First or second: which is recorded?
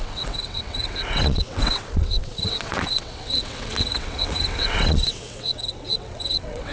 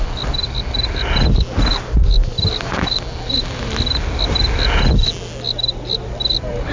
second